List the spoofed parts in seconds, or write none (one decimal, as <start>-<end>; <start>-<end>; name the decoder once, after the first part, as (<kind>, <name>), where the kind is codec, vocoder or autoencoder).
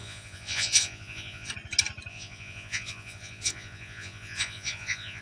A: 0.0-1.5 (vocoder, Vocos); 2.1-5.2